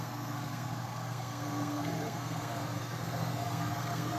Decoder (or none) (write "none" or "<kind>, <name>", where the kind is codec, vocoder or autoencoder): codec, SNAC